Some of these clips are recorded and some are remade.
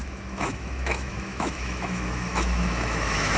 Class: remade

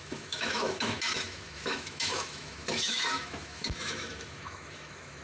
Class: remade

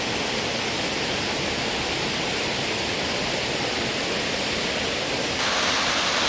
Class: recorded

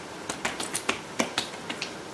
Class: recorded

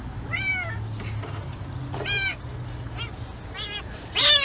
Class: recorded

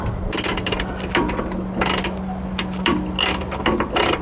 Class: recorded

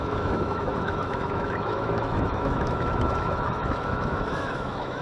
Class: remade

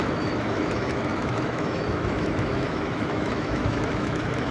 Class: remade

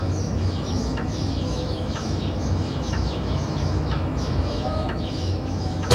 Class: remade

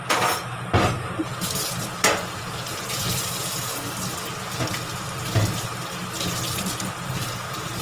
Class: recorded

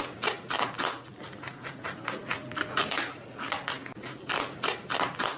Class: recorded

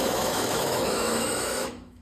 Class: remade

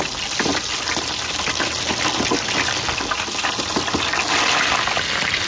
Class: recorded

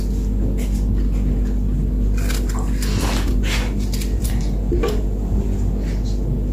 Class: recorded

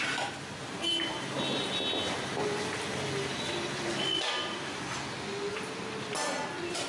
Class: recorded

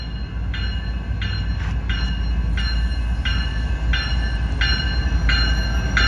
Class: recorded